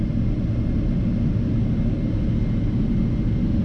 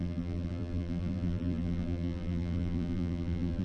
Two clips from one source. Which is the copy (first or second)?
second